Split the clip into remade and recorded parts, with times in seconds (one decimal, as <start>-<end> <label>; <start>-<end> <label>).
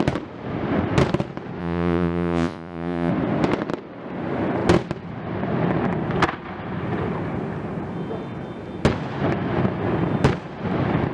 0.0-1.6 recorded; 1.6-3.1 remade; 3.1-11.1 recorded